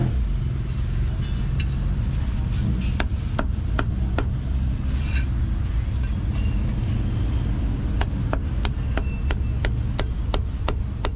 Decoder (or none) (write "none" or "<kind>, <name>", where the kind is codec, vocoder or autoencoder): none